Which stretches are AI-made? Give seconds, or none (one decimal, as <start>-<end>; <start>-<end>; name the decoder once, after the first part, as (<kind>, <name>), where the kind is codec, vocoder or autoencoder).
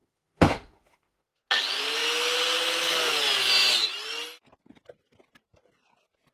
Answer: 0.0-1.4 (autoencoder, DAC-VAE)